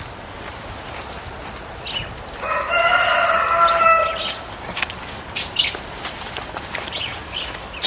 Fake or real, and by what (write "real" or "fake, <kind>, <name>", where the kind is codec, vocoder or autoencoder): real